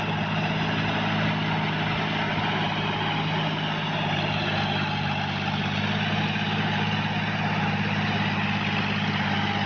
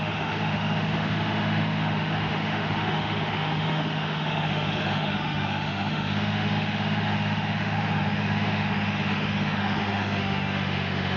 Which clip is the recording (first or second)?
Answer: first